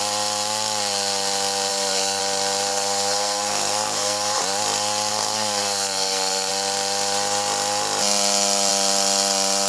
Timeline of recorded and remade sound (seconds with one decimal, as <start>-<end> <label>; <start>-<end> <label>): 0.0-1.7 recorded; 1.7-2.2 remade; 2.2-2.7 recorded; 2.7-4.4 remade; 4.4-5.1 recorded; 5.1-6.5 remade; 6.5-9.7 recorded